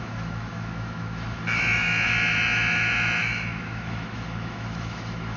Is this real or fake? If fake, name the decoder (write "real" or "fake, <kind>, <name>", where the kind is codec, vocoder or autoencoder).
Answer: fake, autoencoder, DAC-VAE